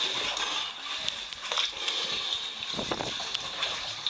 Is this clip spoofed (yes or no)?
no